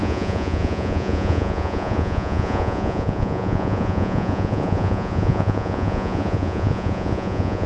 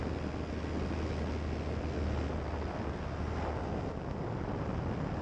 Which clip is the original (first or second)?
second